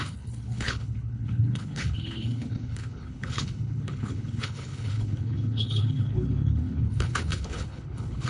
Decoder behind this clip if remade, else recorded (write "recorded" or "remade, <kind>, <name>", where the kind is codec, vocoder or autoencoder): remade, codec, HILCodec